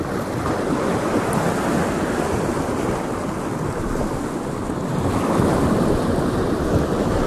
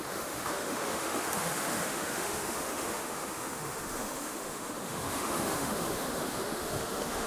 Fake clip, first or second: second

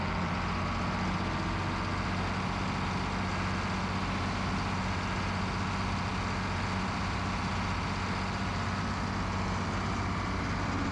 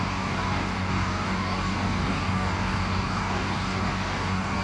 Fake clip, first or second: second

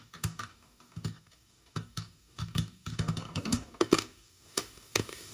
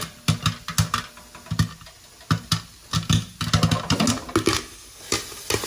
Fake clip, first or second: first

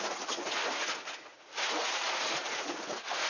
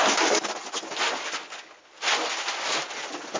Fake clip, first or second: first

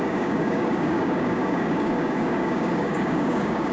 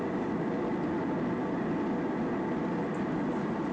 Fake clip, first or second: first